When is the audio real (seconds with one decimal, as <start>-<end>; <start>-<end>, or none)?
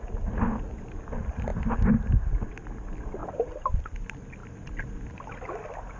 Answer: 0.0-3.2; 3.8-6.0